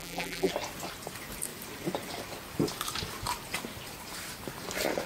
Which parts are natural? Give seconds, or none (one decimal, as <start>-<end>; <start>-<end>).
0.5-5.1